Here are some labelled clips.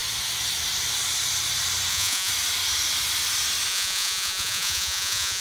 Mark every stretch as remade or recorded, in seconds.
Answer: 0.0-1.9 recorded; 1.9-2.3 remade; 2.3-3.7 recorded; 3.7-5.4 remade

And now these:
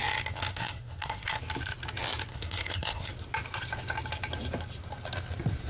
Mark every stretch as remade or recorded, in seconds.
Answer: 0.0-0.5 recorded; 0.5-1.4 remade; 1.4-2.3 recorded; 2.3-3.1 remade; 3.1-5.7 recorded

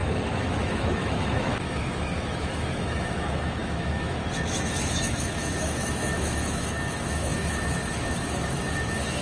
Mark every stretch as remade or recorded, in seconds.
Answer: 0.0-9.2 remade

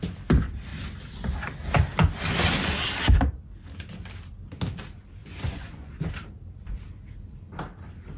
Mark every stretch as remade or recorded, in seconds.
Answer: 0.0-5.2 recorded; 5.2-6.1 remade; 6.1-8.2 recorded

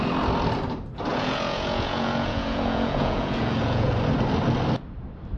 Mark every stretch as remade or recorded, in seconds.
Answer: 0.0-1.1 recorded; 1.1-3.9 remade; 3.9-5.4 recorded

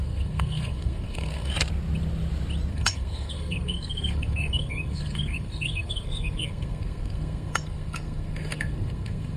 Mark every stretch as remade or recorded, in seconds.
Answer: 0.0-1.5 remade; 1.5-2.7 recorded; 2.7-9.4 remade